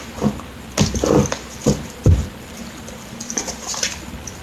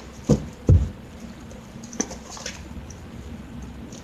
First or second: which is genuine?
first